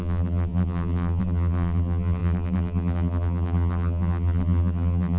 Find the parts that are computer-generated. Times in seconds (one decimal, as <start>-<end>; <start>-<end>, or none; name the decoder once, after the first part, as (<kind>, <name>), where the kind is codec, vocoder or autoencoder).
0.0-5.2 (vocoder, BigVGAN v2)